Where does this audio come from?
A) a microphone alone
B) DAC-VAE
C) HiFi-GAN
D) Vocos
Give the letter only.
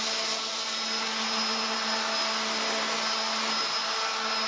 A